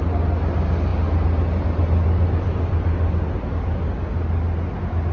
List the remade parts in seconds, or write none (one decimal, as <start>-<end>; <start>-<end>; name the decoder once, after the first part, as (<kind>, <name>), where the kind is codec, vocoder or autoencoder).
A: none